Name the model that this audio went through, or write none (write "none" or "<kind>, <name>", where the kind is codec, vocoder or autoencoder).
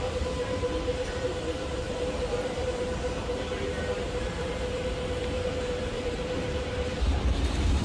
vocoder, BigVGAN v2